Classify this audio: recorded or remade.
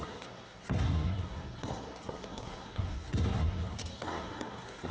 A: remade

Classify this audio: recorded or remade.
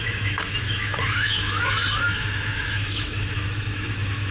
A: remade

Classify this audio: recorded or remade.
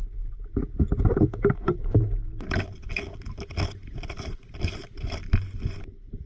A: recorded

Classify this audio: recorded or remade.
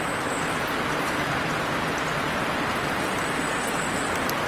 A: recorded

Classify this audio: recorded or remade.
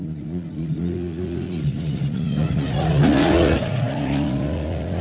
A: remade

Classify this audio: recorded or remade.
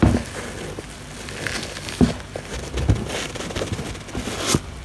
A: recorded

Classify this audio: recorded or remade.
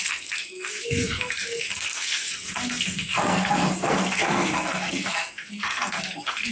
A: remade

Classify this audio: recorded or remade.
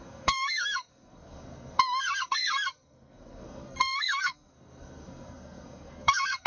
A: remade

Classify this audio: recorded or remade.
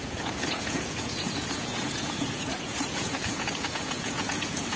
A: remade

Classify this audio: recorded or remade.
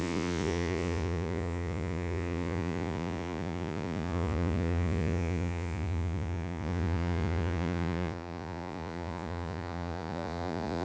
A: remade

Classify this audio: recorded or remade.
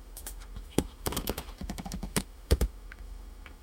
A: remade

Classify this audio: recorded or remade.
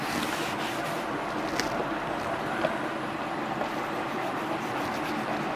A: recorded